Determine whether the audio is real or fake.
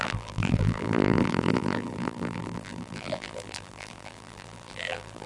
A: fake